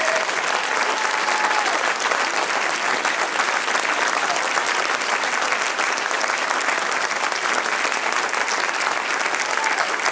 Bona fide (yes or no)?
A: yes